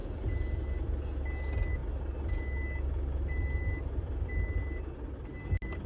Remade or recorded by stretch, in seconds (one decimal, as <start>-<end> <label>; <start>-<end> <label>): 0.0-5.9 recorded